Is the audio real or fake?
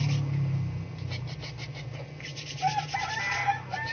real